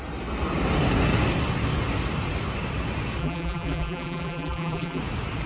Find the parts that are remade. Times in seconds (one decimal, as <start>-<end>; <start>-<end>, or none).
3.2-5.0

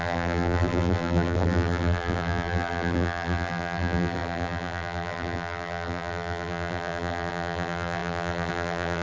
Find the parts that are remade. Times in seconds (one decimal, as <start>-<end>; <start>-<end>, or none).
0.0-9.0

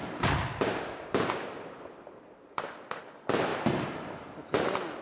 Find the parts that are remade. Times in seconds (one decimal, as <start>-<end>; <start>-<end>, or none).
0.0-3.0

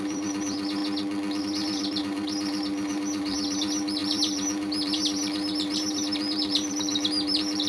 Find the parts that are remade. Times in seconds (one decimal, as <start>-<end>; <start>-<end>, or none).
0.0-0.8; 1.4-7.7